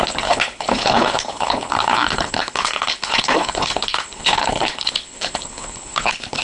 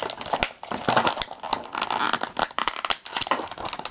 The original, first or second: second